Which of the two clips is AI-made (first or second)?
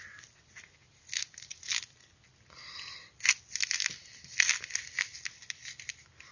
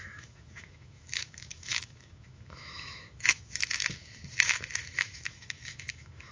second